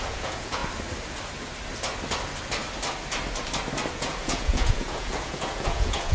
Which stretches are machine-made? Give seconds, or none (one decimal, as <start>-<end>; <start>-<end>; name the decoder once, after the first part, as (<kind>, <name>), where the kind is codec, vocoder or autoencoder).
0.0-0.6 (vocoder, Vocos); 3.9-6.1